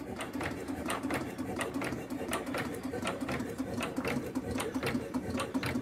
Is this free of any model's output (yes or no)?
no